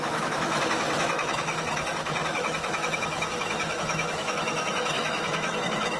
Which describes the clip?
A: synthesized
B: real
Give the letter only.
A